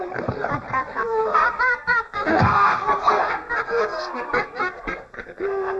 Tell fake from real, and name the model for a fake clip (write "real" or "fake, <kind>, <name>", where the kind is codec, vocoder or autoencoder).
fake, codec, SNAC